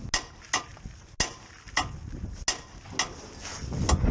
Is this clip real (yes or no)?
yes